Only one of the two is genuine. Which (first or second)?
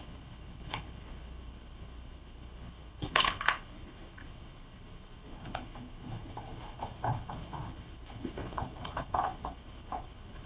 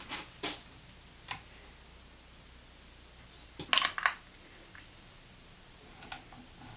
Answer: second